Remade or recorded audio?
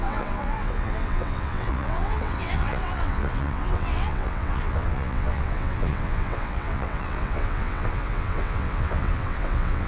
remade